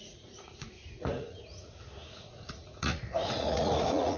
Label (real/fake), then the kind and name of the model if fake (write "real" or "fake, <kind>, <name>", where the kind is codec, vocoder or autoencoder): fake, vocoder, Vocos